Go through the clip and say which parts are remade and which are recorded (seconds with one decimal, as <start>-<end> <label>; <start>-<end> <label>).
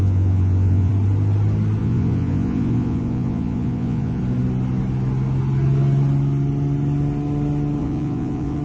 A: 0.0-0.9 remade; 0.9-1.8 recorded; 1.8-4.2 remade; 4.2-7.8 recorded; 7.8-8.6 remade